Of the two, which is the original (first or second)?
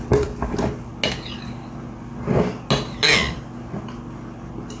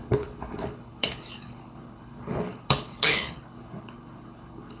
first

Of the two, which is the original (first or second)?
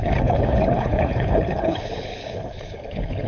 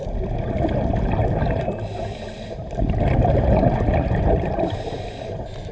second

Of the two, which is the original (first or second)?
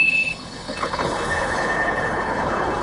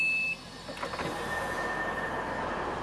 second